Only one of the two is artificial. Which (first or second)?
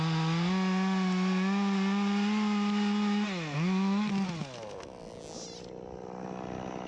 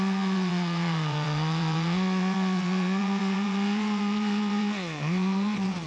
second